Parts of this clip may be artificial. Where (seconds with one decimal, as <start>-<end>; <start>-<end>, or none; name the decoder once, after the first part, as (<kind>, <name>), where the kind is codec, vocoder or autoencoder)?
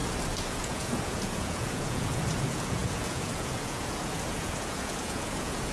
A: 0.5-5.7 (vocoder, Vocos)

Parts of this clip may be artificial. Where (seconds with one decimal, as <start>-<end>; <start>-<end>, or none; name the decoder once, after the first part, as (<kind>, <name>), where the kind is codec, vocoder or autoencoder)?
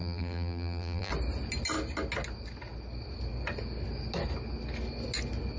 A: 0.0-1.1 (vocoder, BigVGAN v2)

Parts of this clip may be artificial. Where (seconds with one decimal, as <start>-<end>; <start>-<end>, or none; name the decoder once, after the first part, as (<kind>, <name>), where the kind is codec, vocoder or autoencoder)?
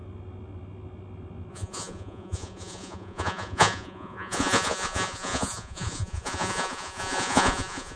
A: 1.5-8.0 (vocoder, Vocos)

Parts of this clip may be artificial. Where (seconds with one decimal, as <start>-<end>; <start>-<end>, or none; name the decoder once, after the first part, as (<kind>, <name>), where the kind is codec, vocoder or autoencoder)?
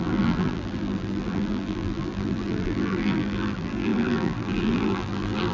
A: 0.0-5.5 (vocoder, BigVGAN v2)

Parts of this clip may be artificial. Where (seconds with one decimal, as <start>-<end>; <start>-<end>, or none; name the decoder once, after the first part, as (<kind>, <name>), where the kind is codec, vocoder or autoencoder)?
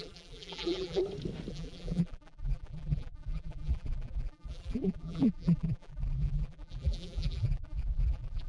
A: 0.0-1.0 (vocoder, BigVGAN v2); 1.5-8.5